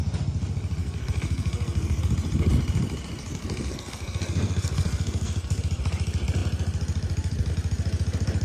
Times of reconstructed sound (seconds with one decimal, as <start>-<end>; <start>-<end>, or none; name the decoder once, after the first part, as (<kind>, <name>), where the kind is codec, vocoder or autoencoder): 0.8-2.0 (codec, SNAC); 3.3-5.6